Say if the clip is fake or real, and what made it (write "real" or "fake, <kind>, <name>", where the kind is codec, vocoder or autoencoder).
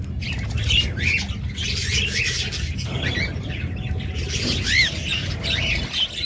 real